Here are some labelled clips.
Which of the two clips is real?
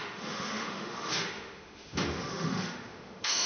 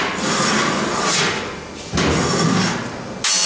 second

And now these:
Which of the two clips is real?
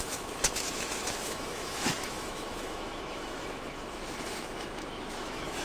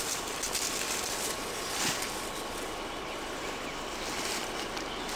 second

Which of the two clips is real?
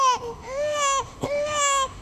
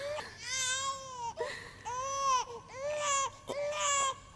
second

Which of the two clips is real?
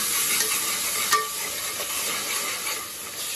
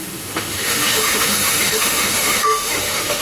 first